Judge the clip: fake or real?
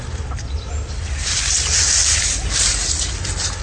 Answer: real